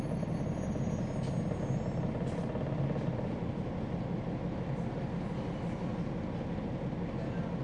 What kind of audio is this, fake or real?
real